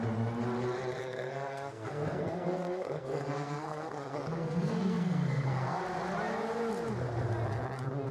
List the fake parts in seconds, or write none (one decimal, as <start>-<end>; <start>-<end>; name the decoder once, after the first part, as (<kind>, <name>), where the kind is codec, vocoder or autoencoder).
1.0-5.8 (codec, SNAC)